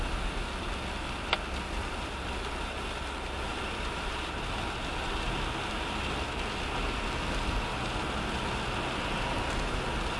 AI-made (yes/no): no